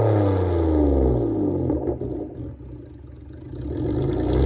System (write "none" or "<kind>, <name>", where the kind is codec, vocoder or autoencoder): none